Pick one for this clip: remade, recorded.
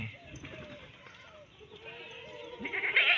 remade